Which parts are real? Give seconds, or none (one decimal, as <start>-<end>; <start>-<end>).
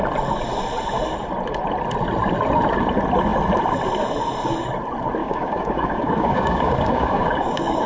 0.0-5.2